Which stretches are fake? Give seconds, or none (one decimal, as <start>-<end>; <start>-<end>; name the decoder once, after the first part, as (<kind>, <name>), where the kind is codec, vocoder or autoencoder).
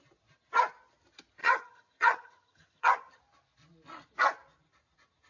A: 1.4-3.2 (vocoder, HiFi-GAN)